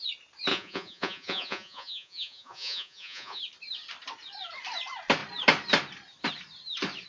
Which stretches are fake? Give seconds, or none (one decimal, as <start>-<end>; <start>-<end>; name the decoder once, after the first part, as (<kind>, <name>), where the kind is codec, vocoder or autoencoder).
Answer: 0.5-3.4 (vocoder, Vocos)